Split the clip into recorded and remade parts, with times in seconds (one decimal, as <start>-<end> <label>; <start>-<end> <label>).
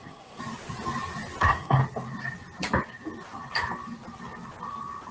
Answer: 0.0-0.4 remade; 0.4-1.4 recorded; 1.4-1.8 remade; 1.8-5.1 recorded